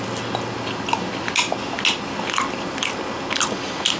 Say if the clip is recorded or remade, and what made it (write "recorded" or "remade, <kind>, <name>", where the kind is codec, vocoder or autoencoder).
recorded